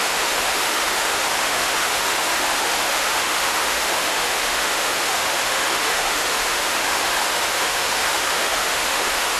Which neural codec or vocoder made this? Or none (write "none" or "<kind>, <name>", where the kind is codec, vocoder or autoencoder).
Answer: autoencoder, DAC-VAE